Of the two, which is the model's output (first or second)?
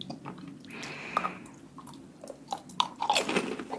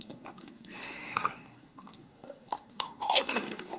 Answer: second